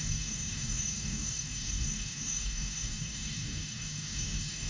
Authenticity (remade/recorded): remade